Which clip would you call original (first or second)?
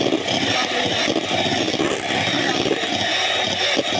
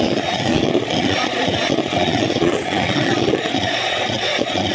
first